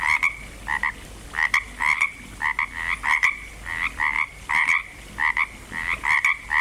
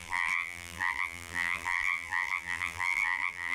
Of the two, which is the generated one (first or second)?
second